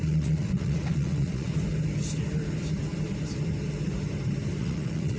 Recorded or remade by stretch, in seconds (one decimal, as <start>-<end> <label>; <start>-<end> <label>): 0.0-1.5 remade; 1.5-4.6 recorded; 4.6-5.2 remade